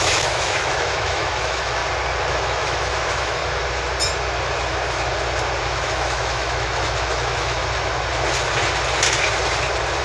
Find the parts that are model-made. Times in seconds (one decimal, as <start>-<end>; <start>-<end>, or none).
0.0-1.8; 2.3-3.4; 5.6-7.6